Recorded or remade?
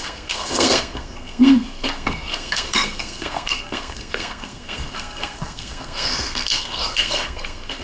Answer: remade